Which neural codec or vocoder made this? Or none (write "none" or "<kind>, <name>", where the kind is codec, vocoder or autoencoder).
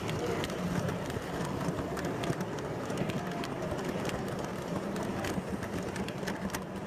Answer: none